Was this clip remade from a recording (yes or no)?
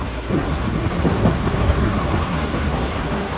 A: yes